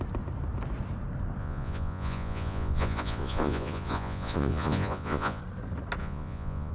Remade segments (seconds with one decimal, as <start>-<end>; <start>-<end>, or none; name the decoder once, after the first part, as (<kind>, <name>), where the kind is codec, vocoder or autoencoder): 1.4-5.4 (vocoder, Vocos); 6.0-6.7